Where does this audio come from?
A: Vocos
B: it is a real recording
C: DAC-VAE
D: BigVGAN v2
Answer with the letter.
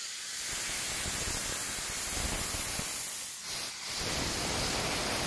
B